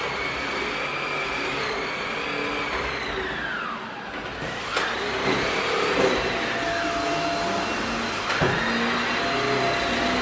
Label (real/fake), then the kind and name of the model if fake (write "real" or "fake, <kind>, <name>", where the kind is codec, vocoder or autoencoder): real